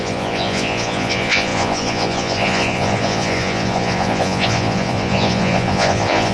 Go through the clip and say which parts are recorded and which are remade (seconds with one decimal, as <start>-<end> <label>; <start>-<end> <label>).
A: 0.0-6.3 remade